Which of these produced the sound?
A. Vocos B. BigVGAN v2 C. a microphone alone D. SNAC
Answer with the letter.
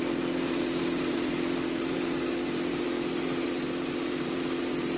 B